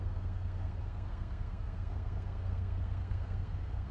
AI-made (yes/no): yes